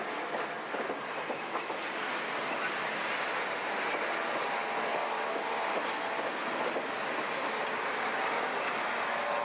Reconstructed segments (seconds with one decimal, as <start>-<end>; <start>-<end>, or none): 4.9-5.5